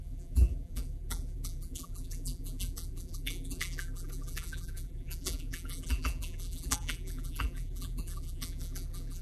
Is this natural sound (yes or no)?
no